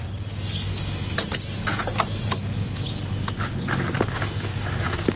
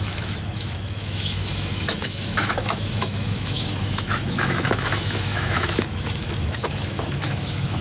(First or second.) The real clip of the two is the first